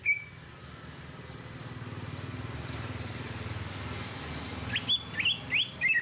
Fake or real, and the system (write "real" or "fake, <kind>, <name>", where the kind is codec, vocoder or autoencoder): real